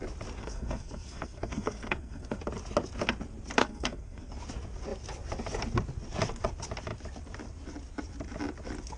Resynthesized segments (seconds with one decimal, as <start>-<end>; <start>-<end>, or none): 0.4-2.4; 3.6-4.3